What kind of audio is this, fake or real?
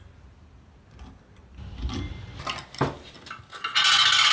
real